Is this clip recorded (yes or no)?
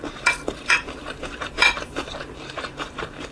no